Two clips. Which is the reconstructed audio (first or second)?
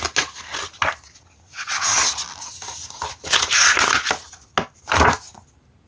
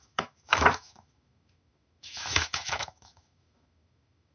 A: second